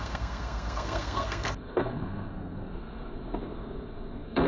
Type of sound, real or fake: fake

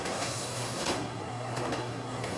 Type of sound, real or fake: fake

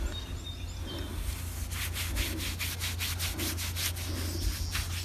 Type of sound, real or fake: real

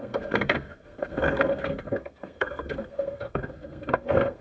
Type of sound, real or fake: fake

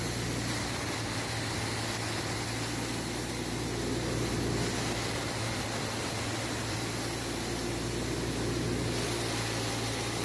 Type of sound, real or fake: real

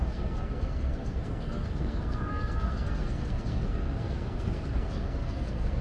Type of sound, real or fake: fake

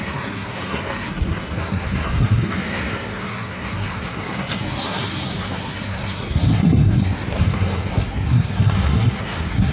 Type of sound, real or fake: fake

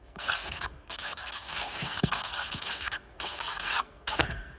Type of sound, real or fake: fake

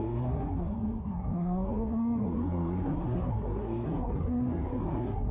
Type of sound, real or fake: fake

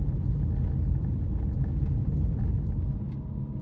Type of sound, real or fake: real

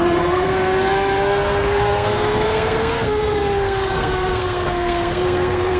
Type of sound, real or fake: fake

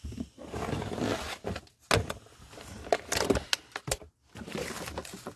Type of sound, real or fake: real